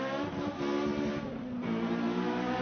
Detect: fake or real real